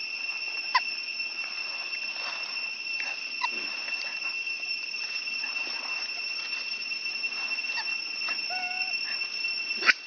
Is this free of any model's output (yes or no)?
yes